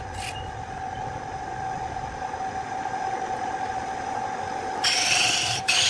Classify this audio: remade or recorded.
recorded